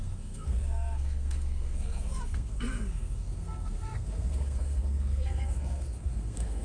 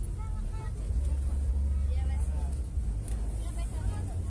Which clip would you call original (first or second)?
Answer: second